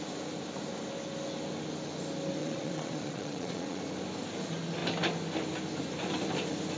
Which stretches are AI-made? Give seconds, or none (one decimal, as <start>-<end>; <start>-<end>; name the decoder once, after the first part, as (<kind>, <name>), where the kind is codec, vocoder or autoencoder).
2.4-3.8 (vocoder, Vocos)

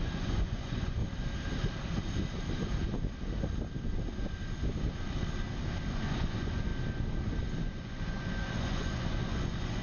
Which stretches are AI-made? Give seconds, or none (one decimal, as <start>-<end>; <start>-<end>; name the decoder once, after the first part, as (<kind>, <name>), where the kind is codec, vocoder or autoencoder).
0.0-1.0 (vocoder, Vocos); 5.9-6.7; 7.6-9.8

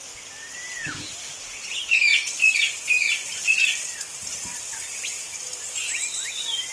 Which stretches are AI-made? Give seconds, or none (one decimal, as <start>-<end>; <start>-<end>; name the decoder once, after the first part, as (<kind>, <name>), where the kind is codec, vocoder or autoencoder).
none

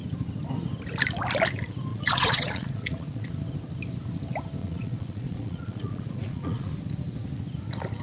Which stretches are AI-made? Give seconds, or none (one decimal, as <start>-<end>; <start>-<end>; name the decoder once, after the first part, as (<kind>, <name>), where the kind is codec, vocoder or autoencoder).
1.9-3.3 (vocoder, Vocos); 4.6-6.7